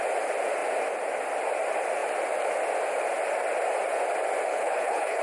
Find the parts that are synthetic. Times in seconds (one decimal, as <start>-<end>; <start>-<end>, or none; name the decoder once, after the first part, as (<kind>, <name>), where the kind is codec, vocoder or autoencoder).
4.5-5.2 (codec, HILCodec)